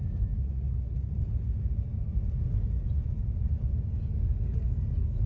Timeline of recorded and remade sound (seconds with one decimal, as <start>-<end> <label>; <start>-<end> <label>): 0.0-0.4 recorded; 0.4-1.1 remade; 1.1-5.3 recorded